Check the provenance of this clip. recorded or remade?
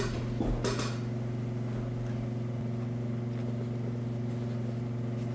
recorded